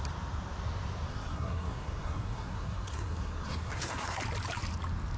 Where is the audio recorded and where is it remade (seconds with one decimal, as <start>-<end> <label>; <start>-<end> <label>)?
0.0-1.1 recorded; 1.1-4.2 remade; 4.2-5.2 recorded